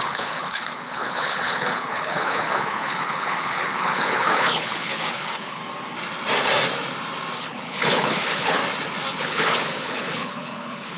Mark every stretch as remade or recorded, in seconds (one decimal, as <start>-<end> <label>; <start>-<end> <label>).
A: 0.0-5.6 remade; 5.6-7.4 recorded; 7.4-8.6 remade; 8.6-9.2 recorded; 9.2-11.0 remade

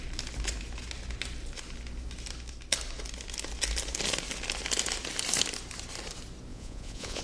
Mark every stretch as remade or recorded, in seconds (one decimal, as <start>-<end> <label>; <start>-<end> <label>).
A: 0.0-6.5 recorded; 6.5-7.2 remade

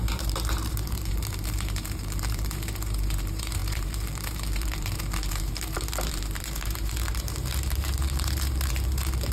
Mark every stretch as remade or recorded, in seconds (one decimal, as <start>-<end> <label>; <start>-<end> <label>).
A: 0.0-9.3 remade

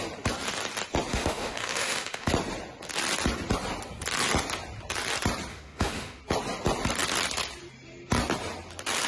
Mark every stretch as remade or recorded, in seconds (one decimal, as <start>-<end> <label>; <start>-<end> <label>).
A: 0.0-1.1 recorded; 1.1-2.3 remade; 2.3-5.5 recorded; 5.5-6.2 remade; 6.2-9.1 recorded

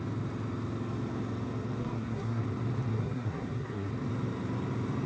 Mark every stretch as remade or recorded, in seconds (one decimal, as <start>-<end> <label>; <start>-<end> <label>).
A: 0.0-1.8 recorded; 1.8-2.4 remade; 2.4-2.9 recorded; 2.9-3.9 remade; 3.9-5.1 recorded

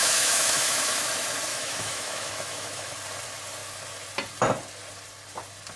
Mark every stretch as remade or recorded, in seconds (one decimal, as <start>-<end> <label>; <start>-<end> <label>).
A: 0.0-1.1 remade; 1.1-1.5 recorded; 1.5-2.9 remade; 2.9-5.8 recorded